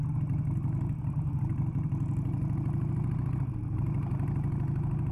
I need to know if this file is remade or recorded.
recorded